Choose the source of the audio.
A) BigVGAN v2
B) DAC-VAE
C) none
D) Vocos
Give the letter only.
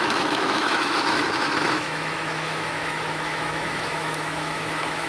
B